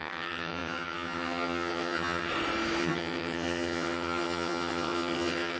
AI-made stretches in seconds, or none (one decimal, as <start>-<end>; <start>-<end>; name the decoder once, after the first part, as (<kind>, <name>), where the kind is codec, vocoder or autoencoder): 0.0-2.3 (vocoder, HiFi-GAN); 2.8-5.6